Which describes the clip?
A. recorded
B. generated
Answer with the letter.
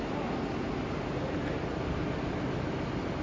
A